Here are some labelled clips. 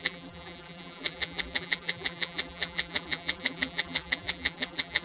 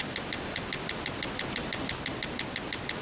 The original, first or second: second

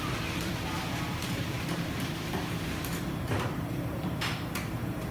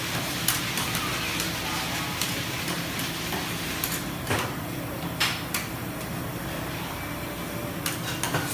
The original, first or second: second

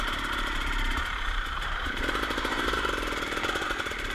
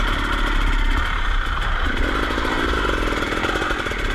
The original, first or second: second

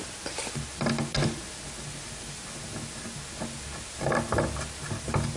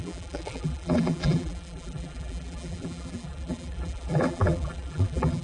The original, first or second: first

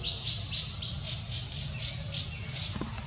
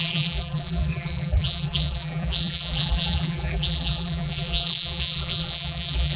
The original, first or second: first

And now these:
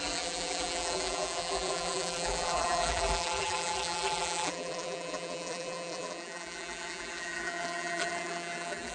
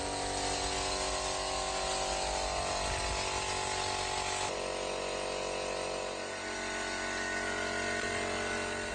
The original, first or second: second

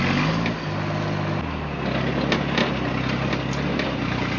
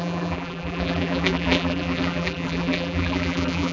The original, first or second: first